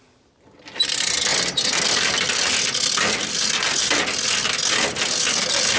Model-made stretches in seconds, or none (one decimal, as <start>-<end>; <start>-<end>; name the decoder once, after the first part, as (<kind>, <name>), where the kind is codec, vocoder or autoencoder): none